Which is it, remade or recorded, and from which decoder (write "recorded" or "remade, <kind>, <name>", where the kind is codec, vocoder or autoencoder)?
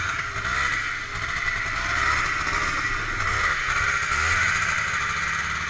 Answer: recorded